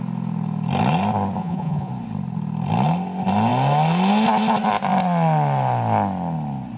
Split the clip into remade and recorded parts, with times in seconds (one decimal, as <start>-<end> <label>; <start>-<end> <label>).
0.0-1.4 recorded; 1.4-1.9 remade; 1.9-6.8 recorded